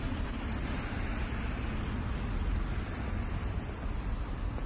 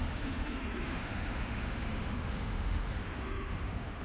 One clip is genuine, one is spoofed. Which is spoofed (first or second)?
second